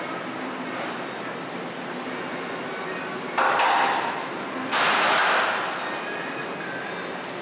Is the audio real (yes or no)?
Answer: yes